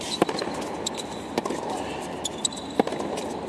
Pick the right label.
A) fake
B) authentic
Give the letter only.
B